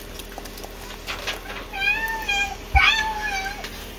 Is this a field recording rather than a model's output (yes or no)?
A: yes